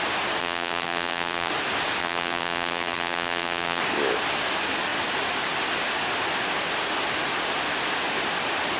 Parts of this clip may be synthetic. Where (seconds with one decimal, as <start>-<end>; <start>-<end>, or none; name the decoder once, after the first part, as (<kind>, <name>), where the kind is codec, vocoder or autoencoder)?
0.4-1.5 (vocoder, BigVGAN v2); 2.0-3.8